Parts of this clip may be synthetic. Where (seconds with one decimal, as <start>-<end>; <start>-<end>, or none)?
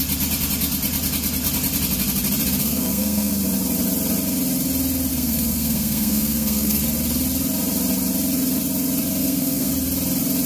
2.6-3.3; 5.1-6.8; 9.2-9.7